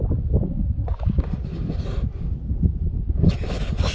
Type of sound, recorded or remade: remade